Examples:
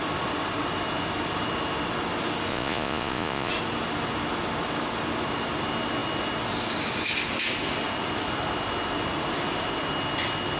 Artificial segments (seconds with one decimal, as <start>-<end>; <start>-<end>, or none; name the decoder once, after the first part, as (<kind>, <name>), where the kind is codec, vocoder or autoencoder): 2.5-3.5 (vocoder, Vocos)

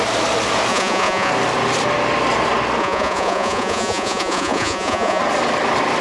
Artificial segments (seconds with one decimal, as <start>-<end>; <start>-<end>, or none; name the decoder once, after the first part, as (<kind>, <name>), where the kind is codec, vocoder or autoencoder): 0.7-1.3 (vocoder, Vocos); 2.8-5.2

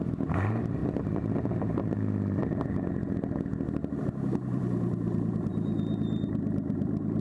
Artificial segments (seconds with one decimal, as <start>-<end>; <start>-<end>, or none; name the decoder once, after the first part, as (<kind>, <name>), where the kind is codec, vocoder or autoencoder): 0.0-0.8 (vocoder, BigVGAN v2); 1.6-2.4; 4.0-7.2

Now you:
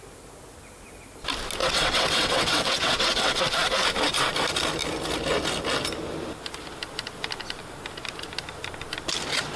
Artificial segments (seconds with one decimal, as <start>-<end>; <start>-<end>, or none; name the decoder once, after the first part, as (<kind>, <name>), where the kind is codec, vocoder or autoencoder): 1.6-3.4 (vocoder, WaveNeXt)